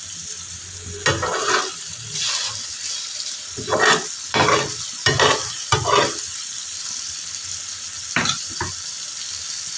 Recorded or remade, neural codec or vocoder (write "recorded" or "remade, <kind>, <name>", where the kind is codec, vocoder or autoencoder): recorded